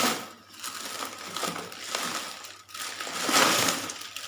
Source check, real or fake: real